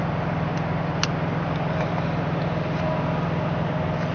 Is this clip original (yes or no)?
yes